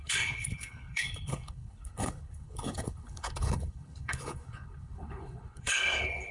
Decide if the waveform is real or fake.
fake